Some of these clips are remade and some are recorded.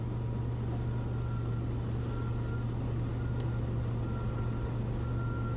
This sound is recorded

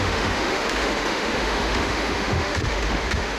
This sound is remade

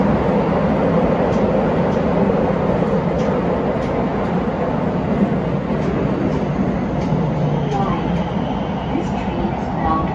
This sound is recorded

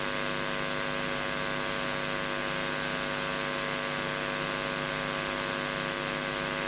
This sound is recorded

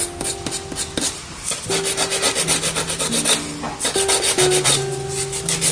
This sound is recorded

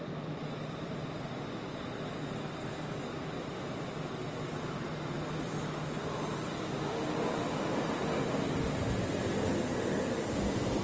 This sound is recorded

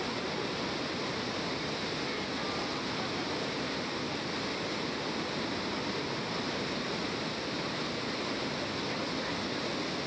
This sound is recorded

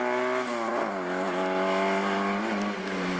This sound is recorded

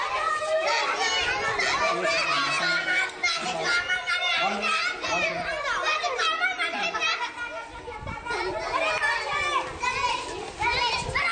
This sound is recorded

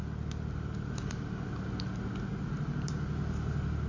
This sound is recorded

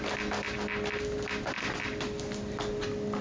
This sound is recorded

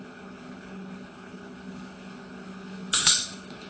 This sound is remade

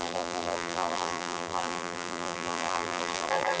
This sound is remade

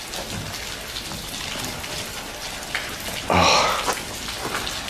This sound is recorded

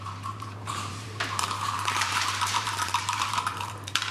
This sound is remade